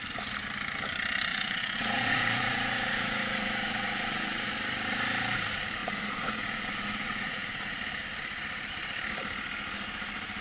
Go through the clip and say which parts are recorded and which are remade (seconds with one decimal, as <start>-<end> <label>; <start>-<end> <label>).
0.0-1.3 recorded; 1.3-4.5 remade; 4.5-5.8 recorded; 5.8-7.8 remade; 7.8-10.4 recorded